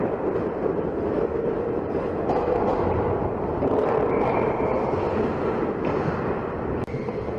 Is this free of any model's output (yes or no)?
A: no